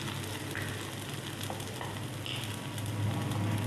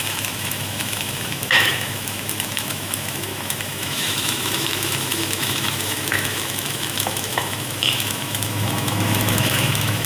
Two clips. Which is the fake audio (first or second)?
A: second